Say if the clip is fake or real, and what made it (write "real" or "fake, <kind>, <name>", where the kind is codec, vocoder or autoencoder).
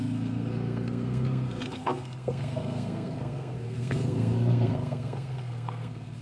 fake, codec, SNAC